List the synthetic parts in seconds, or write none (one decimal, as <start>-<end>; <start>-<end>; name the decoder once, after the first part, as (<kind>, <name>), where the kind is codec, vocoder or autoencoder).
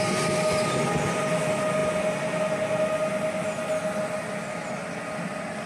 none